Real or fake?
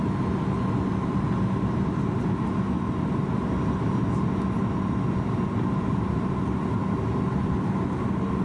real